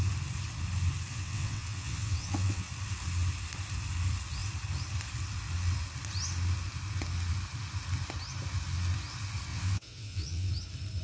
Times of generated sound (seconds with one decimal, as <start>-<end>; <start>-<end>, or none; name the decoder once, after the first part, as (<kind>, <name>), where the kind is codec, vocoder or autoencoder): 1.1-2.7 (vocoder, WaveNeXt); 9.5-10.5